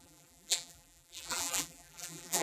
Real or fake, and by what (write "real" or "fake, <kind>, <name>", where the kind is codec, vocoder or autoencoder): fake, vocoder, BigVGAN v2